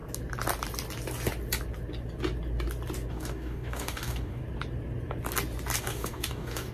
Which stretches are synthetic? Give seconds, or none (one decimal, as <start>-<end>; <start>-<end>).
3.1-4.4; 5.8-6.7